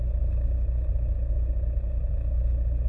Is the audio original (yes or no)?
yes